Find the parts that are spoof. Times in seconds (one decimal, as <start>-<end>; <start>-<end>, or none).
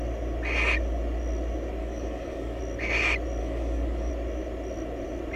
1.8-2.6; 3.4-4.1